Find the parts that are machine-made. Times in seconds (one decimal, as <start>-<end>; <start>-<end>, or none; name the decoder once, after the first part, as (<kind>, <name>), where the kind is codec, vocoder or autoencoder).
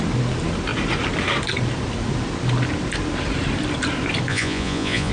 4.3-5.1 (vocoder, Vocos)